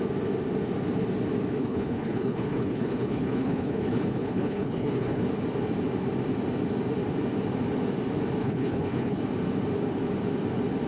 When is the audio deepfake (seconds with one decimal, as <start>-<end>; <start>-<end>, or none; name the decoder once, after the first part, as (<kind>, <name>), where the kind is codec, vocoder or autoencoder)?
1.6-5.2 (codec, HILCodec); 8.4-9.2